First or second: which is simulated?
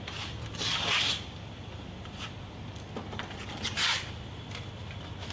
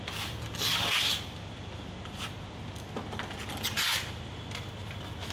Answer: first